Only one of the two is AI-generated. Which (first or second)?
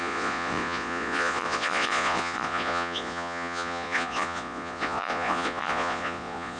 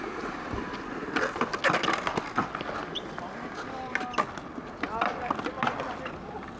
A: first